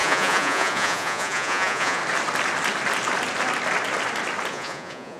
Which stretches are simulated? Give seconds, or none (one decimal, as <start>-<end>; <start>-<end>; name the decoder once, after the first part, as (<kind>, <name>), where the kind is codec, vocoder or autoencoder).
0.0-2.0 (vocoder, Vocos); 4.5-5.2